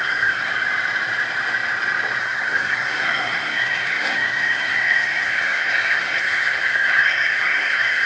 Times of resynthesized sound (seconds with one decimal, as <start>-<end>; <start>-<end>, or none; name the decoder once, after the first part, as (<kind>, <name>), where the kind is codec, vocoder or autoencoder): 0.0-0.5 (codec, SNAC); 2.2-8.1